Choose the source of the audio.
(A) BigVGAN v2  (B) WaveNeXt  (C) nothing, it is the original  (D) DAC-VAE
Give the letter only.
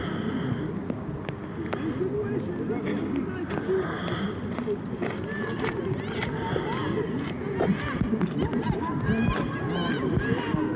C